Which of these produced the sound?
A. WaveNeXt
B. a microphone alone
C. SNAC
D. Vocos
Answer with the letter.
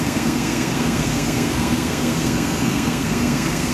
C